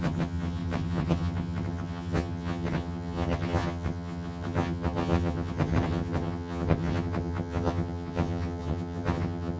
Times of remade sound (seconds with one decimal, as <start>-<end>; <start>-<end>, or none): 0.0-9.6